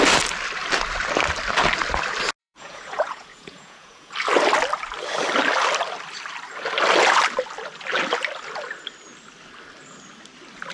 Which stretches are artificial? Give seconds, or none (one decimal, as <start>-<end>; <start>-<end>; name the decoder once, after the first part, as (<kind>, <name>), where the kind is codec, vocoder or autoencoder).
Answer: 2.4-4.1 (vocoder, Vocos)